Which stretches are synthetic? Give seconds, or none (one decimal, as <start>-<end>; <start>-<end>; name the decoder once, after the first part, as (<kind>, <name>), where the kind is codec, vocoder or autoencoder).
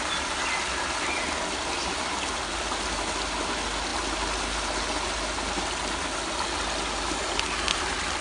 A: none